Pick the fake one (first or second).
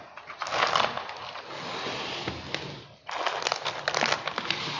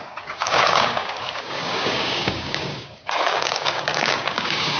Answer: second